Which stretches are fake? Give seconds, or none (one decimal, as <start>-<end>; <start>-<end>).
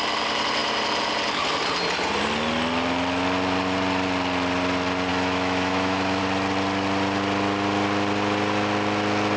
5.1-6.2